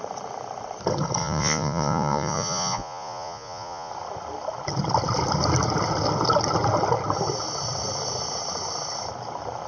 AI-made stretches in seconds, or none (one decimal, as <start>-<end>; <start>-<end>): 1.2-3.9